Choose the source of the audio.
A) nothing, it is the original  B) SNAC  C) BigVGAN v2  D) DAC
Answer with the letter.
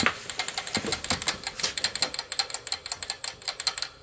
A